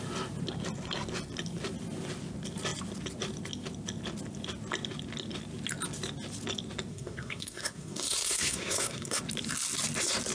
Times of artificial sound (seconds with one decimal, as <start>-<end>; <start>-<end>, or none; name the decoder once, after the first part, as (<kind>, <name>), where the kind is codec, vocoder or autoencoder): 6.9-9.2 (codec, SNAC)